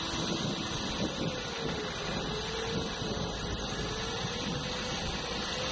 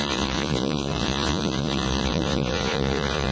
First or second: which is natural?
first